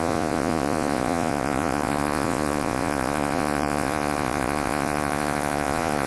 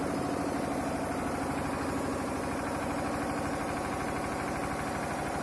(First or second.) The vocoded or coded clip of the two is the first